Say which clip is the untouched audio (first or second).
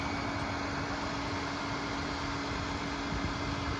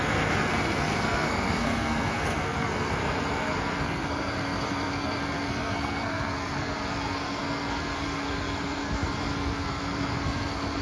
first